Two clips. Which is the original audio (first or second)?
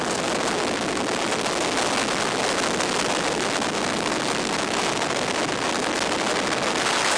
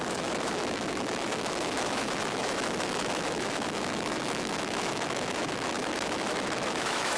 first